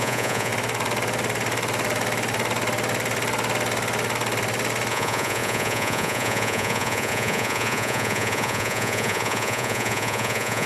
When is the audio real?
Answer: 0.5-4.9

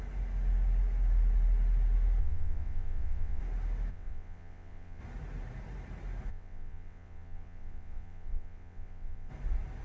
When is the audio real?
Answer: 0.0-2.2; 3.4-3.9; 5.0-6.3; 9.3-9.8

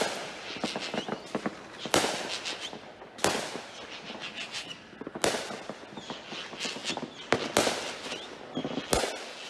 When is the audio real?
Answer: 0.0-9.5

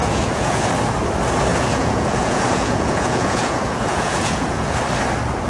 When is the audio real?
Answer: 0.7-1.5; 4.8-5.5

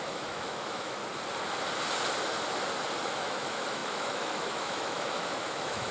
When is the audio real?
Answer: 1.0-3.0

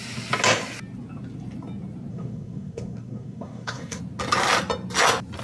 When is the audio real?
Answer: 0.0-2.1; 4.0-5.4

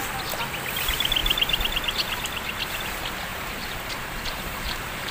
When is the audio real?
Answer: 0.0-3.3

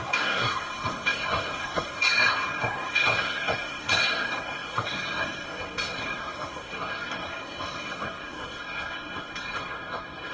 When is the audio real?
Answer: none